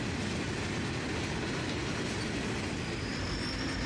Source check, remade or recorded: recorded